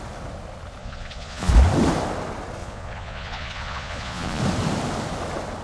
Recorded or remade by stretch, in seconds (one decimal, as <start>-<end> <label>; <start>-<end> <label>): 0.0-0.8 recorded; 0.8-1.5 remade; 1.5-2.6 recorded; 2.6-4.4 remade; 4.4-5.6 recorded